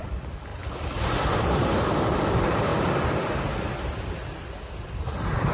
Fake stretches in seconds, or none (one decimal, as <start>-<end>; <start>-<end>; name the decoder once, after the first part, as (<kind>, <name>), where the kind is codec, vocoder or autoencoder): none